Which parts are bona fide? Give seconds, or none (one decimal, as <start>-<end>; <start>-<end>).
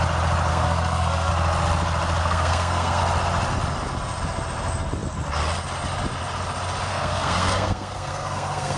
0.0-0.5; 1.3-2.2; 3.0-6.9